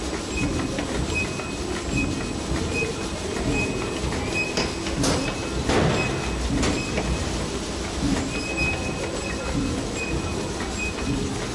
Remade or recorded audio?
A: recorded